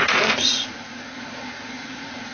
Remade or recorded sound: remade